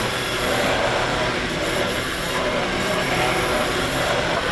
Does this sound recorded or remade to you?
remade